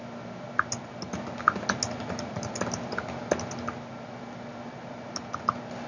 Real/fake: real